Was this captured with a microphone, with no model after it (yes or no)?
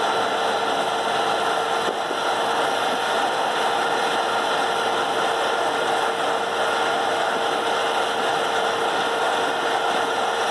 yes